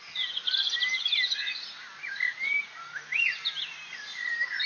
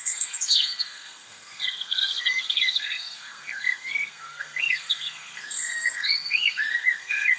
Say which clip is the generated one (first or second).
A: second